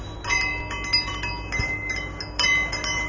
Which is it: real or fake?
real